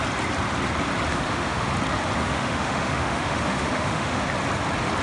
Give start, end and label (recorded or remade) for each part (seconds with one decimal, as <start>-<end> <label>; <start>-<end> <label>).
0.0-1.1 recorded; 1.1-1.7 remade; 1.7-2.2 recorded; 2.2-4.2 remade; 4.2-5.0 recorded